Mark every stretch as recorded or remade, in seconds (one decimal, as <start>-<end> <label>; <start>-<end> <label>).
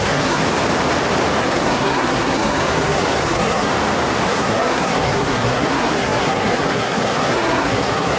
0.0-0.4 remade; 0.4-1.4 recorded; 1.4-3.7 remade; 3.7-4.3 recorded; 4.3-8.2 remade